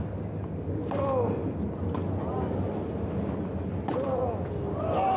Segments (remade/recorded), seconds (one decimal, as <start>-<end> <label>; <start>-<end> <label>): 0.0-5.2 recorded

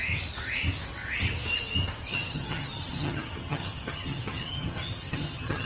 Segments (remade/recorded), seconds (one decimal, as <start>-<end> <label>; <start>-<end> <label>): 0.0-2.1 recorded; 2.1-5.7 remade